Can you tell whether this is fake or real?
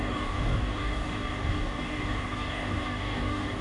fake